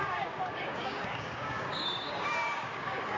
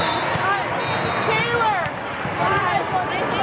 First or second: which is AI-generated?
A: first